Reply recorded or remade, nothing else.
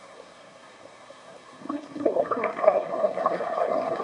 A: remade